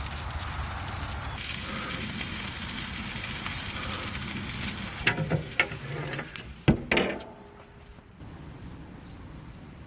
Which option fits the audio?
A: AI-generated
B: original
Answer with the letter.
B